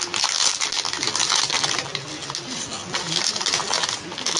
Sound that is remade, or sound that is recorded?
recorded